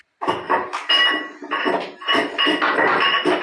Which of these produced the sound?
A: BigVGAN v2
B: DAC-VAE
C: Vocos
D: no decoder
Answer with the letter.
D